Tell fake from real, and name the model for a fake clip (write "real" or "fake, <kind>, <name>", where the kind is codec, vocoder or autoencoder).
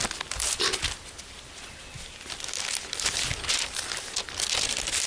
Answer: real